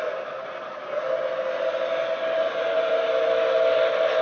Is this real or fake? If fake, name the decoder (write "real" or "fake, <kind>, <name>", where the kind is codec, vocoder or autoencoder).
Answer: real